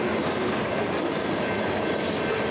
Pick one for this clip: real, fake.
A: real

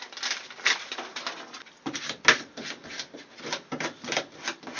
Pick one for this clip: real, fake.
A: real